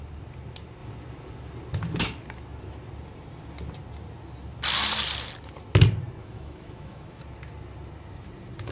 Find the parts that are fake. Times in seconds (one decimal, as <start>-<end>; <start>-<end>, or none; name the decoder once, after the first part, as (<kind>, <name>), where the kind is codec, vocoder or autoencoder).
6.2-7.2 (autoencoder, DAC-VAE)